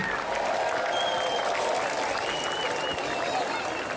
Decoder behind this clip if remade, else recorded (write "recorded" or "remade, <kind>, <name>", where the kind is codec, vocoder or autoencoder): recorded